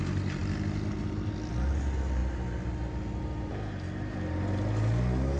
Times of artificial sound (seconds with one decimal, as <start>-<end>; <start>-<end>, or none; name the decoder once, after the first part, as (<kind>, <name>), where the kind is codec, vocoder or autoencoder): none